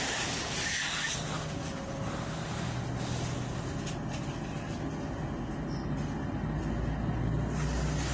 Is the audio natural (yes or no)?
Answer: yes